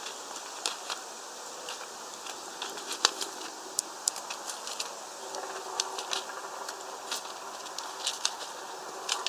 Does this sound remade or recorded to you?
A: recorded